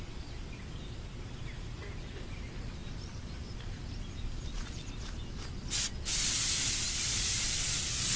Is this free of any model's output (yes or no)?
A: yes